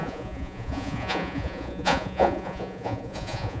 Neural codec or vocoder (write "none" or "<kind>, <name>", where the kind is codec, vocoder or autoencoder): vocoder, Vocos